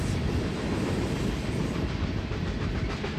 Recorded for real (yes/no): yes